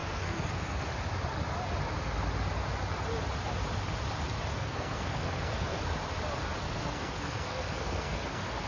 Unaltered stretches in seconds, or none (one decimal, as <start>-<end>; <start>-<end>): 0.9-4.6; 5.8-6.6